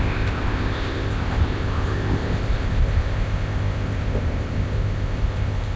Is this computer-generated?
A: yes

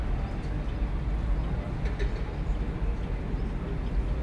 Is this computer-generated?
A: no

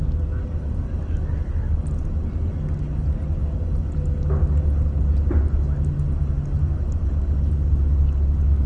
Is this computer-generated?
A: no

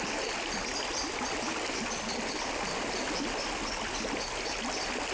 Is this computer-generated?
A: no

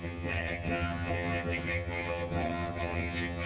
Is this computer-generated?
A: yes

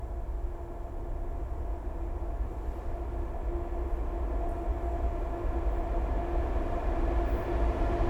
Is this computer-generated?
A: no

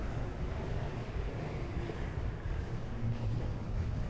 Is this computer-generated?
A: yes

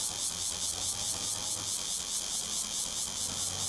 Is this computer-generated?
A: no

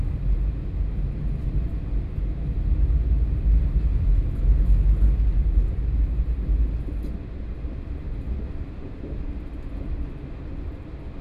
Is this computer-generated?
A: no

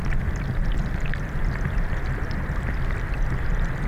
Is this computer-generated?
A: no